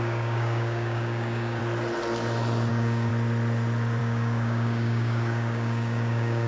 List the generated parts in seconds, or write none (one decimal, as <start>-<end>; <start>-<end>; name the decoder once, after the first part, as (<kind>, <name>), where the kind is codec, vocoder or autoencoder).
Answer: 0.0-1.6 (codec, DAC); 2.7-3.1; 4.0-6.5